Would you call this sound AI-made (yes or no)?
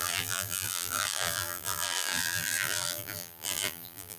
yes